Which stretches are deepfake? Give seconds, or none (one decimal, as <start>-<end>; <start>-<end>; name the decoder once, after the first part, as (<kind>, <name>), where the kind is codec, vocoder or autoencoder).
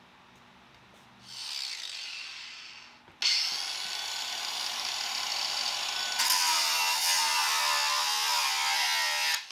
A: none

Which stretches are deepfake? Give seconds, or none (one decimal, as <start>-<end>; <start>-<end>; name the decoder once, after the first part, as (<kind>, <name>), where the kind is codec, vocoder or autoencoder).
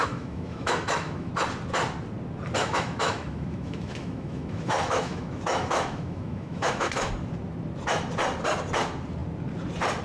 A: 0.0-1.3 (autoencoder, DAC-VAE); 2.6-7.1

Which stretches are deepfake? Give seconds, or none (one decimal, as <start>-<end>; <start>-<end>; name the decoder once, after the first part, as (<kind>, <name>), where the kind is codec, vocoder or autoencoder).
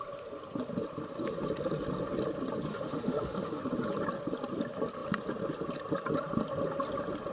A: 2.7-3.6 (autoencoder, DAC-VAE)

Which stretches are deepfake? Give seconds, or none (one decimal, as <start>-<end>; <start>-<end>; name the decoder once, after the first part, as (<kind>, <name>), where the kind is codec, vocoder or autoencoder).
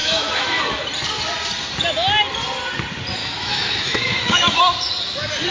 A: 0.0-0.6 (autoencoder, DAC-VAE); 3.2-4.6